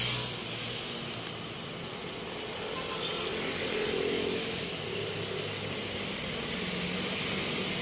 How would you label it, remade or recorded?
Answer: recorded